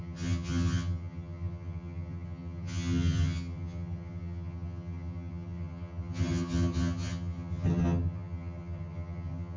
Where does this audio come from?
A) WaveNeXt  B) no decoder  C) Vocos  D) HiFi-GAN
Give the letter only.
D